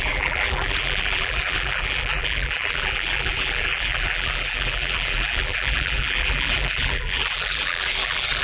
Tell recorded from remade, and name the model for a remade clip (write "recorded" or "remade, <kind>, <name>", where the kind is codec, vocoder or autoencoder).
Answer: remade, vocoder, BigVGAN v2